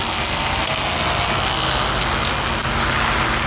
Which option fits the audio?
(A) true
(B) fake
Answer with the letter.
A